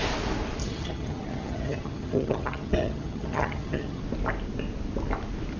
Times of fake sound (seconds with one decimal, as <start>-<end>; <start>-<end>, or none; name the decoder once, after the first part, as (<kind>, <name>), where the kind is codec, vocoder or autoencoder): 0.6-4.0 (vocoder, HiFi-GAN)